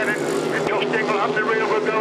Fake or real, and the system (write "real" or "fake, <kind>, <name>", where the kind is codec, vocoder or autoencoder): real